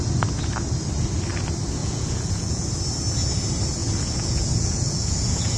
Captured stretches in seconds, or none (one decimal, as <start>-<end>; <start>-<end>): 0.0-1.8; 2.7-3.8